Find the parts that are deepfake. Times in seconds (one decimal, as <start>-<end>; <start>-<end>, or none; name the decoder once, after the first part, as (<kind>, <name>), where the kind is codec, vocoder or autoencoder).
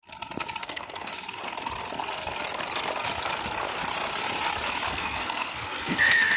0.6-1.1 (codec, SNAC); 4.9-6.4